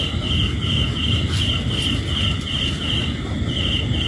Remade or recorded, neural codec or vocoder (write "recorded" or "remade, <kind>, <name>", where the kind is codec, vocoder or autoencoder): recorded